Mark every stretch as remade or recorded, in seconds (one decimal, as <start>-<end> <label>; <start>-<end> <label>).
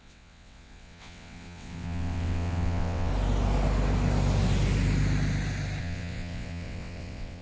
0.0-3.1 remade; 3.1-5.8 recorded; 5.8-7.4 remade